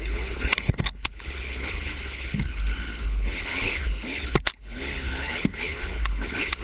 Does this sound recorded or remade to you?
remade